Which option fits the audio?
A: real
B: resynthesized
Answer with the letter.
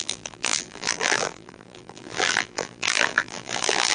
B